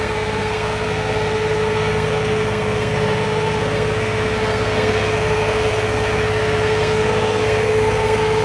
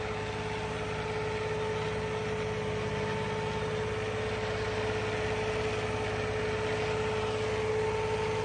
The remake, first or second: first